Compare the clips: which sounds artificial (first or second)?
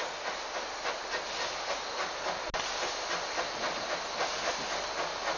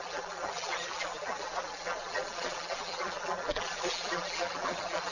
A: second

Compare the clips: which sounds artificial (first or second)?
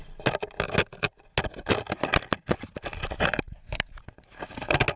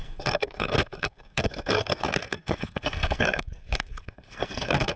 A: second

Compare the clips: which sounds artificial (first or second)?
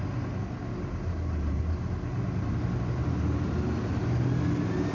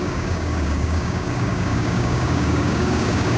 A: second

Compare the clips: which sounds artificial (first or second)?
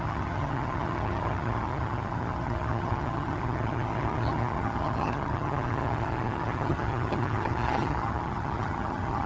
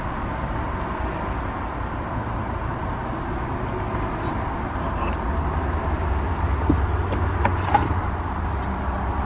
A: first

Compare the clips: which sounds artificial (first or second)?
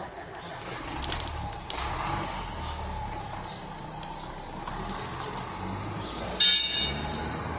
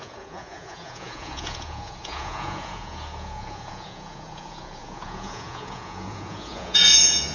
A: second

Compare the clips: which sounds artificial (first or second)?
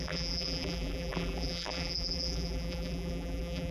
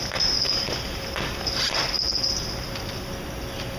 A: first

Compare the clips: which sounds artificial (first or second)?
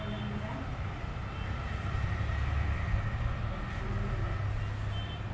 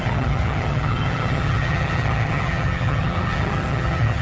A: second